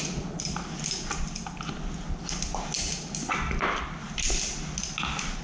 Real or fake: real